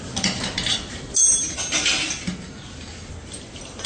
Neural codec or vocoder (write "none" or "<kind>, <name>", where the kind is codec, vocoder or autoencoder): none